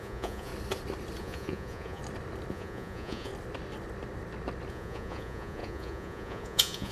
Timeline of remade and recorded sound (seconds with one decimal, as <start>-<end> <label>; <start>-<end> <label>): 0.0-0.5 remade; 0.5-1.2 recorded; 1.2-2.0 remade; 2.0-2.5 recorded; 2.5-3.3 remade; 3.3-4.7 recorded; 4.7-6.9 remade